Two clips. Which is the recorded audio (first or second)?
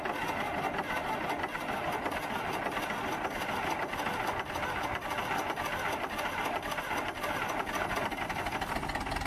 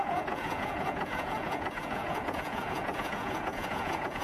first